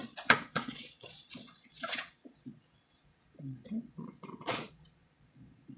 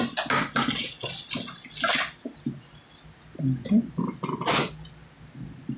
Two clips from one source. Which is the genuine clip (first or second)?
second